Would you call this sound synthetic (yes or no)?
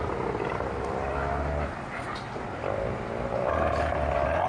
no